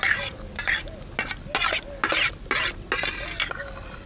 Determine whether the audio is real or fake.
real